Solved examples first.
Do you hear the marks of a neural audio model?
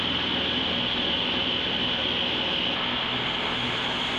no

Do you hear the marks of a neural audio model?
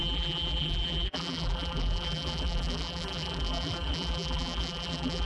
yes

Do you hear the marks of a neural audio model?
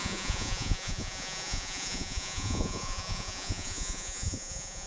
yes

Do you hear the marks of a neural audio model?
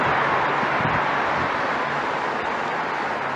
no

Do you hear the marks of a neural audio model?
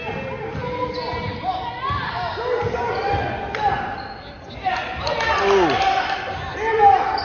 no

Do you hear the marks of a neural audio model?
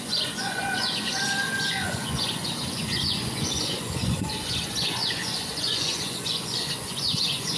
yes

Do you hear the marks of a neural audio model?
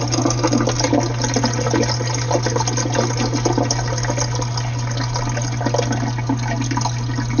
no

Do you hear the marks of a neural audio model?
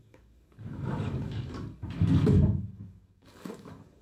yes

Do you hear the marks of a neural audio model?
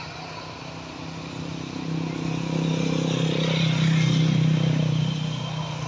no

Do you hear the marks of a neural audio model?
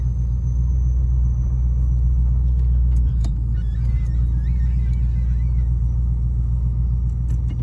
no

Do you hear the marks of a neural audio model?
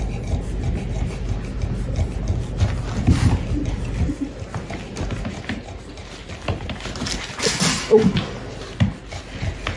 no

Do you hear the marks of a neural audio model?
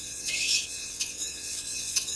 yes